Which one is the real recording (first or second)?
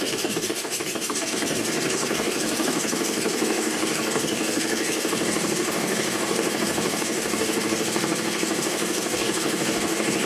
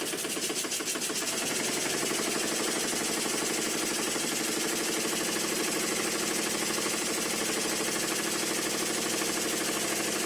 second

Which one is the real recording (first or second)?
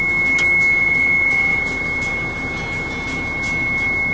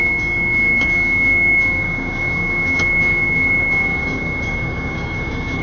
first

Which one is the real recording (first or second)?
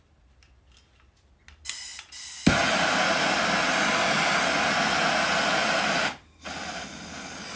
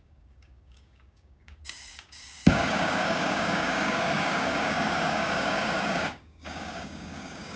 first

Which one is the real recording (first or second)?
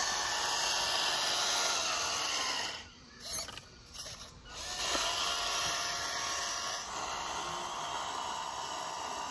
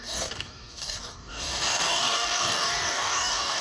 first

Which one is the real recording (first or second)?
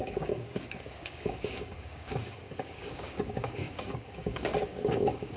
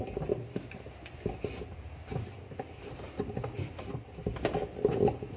second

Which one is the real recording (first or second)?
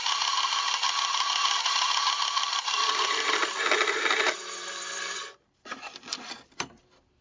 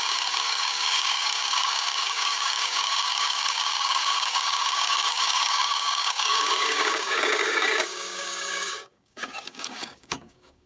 first